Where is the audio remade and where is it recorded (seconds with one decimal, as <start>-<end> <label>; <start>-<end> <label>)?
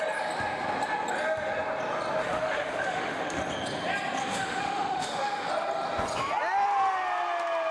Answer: 0.0-2.2 recorded; 2.2-3.4 remade; 3.4-4.2 recorded; 4.2-5.5 remade; 5.5-7.7 recorded